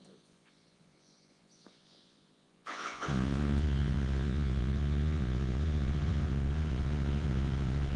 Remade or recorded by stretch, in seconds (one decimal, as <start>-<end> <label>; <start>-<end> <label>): 0.0-8.0 remade